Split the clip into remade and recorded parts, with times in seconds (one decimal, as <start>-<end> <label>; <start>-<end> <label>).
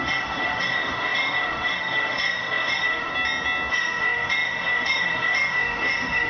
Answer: 0.0-3.1 remade; 3.1-3.7 recorded; 3.7-6.3 remade